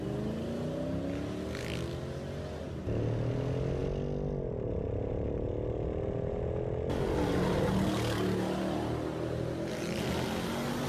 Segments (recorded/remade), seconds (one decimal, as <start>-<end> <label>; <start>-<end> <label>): 0.0-10.9 recorded